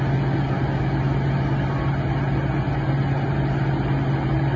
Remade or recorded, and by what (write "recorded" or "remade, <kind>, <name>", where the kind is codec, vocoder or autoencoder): recorded